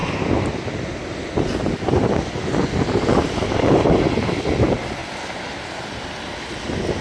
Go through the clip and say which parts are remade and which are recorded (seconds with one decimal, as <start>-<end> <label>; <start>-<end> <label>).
0.0-7.0 recorded